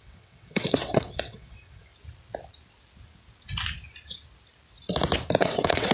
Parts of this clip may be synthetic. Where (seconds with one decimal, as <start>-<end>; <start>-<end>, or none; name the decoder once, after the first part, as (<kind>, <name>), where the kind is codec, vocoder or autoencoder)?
0.0-1.9 (vocoder, WaveNeXt); 5.4-5.9